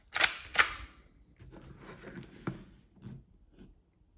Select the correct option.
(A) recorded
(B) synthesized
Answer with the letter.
A